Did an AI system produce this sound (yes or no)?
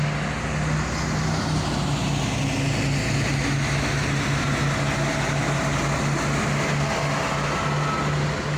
no